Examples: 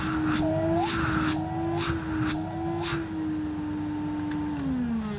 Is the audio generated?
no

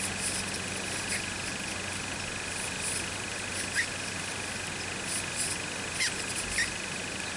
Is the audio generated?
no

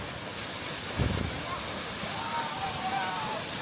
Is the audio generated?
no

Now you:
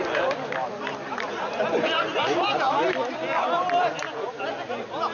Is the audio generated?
no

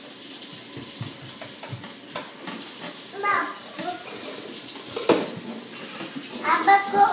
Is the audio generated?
no